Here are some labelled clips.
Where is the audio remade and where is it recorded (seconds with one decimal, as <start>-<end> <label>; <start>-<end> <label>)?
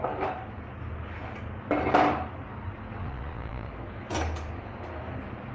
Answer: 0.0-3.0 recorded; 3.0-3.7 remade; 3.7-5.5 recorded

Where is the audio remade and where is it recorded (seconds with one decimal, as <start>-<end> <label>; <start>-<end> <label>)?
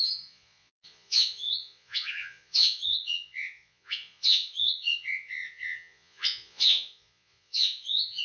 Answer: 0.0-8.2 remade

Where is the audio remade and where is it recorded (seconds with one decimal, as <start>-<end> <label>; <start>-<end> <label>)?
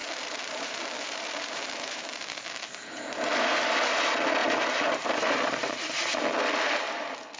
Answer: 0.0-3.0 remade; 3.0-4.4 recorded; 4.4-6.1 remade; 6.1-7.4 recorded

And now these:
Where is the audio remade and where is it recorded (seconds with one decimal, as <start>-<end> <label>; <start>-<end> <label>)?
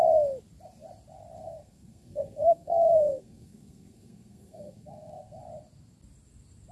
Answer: 0.0-1.4 recorded; 1.4-5.4 remade; 5.4-6.7 recorded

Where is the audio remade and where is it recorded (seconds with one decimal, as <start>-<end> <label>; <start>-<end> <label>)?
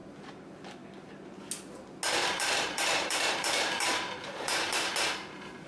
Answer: 0.0-2.2 recorded; 2.2-4.9 remade; 4.9-5.7 recorded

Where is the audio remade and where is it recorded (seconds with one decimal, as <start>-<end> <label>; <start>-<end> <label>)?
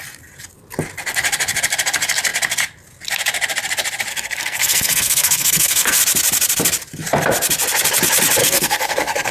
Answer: 0.0-4.1 recorded; 4.1-6.0 remade; 6.0-8.4 recorded; 8.4-9.3 remade